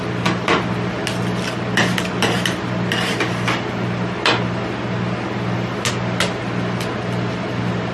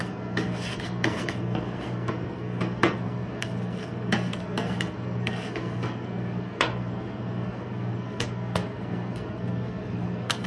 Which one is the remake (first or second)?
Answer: second